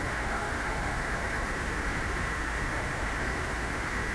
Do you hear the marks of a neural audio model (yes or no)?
yes